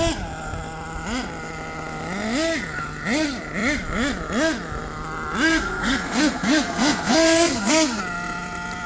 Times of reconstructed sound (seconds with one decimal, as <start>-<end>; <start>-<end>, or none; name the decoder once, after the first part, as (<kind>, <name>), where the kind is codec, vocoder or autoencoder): 5.5-8.0 (codec, SNAC)